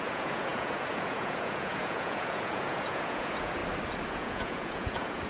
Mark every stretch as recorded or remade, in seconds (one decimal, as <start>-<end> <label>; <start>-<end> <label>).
0.0-3.6 remade; 3.6-4.1 recorded; 4.1-5.3 remade

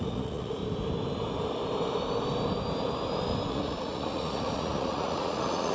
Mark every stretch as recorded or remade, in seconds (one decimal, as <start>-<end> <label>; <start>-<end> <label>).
0.0-0.6 remade; 0.6-3.5 recorded; 3.5-5.7 remade

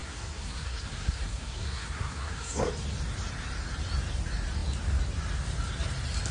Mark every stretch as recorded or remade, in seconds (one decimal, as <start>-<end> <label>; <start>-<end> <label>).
0.0-2.7 remade; 2.7-6.3 recorded

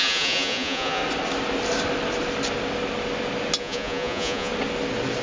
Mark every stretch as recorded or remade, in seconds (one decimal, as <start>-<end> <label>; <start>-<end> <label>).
0.0-1.0 remade; 1.0-3.6 recorded; 3.6-4.5 remade; 4.5-5.2 recorded